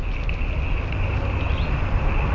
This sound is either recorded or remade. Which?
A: recorded